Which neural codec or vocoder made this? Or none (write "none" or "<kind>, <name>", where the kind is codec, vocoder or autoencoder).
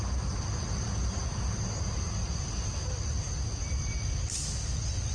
none